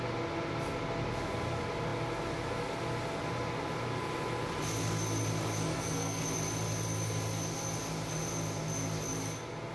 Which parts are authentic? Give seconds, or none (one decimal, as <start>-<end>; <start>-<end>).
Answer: 0.0-5.7; 6.2-9.7